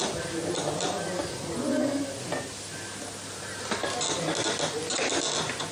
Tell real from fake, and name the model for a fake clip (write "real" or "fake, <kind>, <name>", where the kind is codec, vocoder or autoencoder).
real